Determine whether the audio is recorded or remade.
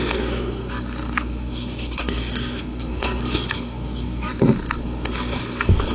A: remade